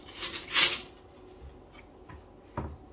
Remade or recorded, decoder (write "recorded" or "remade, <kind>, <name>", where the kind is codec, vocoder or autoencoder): recorded